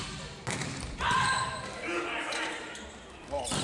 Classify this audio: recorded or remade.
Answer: recorded